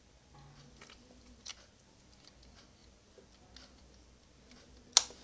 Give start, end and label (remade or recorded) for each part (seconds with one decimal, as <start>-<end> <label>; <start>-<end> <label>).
0.0-5.2 recorded